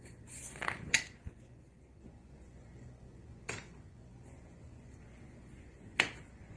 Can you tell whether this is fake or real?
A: fake